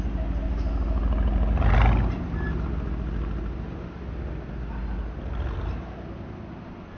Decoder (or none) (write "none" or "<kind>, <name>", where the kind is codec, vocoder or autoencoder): none